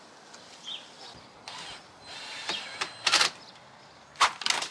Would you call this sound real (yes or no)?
yes